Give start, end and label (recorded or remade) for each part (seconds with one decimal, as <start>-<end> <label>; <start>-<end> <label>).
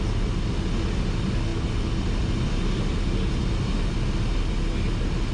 0.0-5.3 recorded